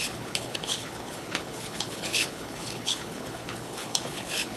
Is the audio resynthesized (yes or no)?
yes